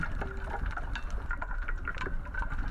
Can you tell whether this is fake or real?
real